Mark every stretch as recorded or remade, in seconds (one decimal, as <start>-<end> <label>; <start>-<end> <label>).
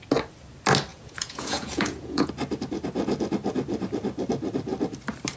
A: 0.0-0.9 recorded; 0.9-2.3 remade; 2.3-5.4 recorded